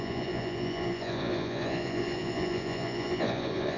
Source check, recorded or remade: remade